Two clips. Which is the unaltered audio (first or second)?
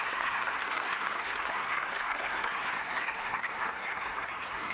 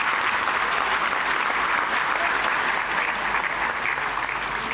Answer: second